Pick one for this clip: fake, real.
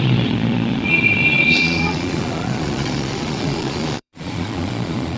fake